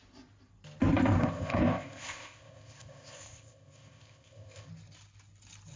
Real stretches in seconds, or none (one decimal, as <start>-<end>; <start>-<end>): 0.0-1.2; 4.7-5.8